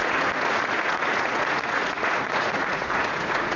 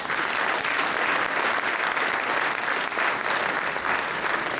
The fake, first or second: first